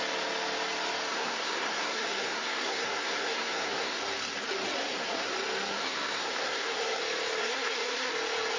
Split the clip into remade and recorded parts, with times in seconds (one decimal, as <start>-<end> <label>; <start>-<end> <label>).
0.0-1.1 recorded; 1.1-4.0 remade; 4.0-4.8 recorded; 4.8-5.3 remade; 5.3-5.7 recorded; 5.7-7.0 remade; 7.0-7.4 recorded; 7.4-8.1 remade; 8.1-8.6 recorded